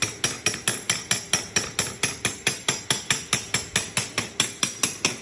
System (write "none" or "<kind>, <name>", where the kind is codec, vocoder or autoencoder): none